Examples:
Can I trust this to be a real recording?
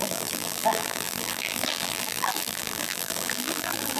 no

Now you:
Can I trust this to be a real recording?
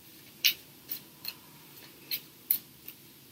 no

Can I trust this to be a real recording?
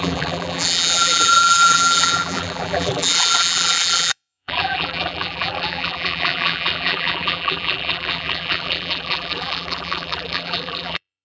no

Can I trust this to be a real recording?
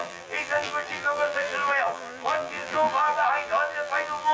no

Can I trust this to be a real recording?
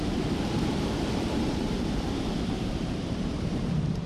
no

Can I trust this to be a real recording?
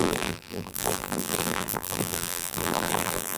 no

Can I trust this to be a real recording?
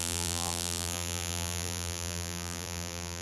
no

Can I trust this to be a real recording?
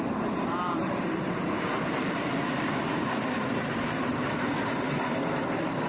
no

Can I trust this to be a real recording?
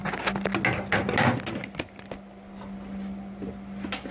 yes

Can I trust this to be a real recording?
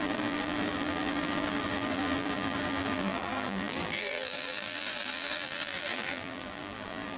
no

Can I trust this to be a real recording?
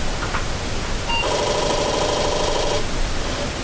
no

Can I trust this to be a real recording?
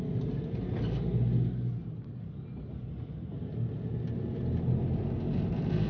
yes